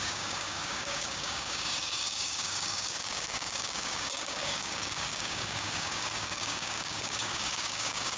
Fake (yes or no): yes